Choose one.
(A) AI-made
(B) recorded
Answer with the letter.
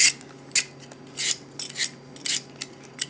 B